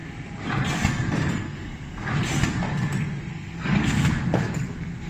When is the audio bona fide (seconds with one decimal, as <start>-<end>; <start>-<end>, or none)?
0.0-1.3; 2.1-3.3